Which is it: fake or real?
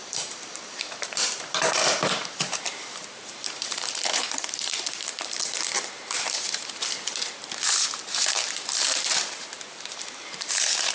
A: fake